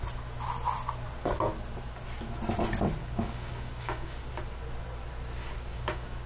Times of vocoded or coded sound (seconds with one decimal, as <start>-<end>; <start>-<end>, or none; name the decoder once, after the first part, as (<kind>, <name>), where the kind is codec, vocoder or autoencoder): 3.0-4.3 (codec, DAC); 5.7-6.3